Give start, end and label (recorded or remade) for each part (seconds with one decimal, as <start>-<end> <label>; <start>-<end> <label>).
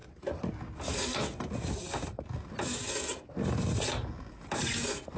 0.0-5.2 recorded